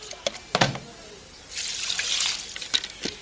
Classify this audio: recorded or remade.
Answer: recorded